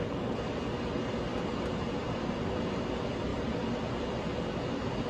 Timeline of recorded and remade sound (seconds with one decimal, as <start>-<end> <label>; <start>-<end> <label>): 0.0-5.1 recorded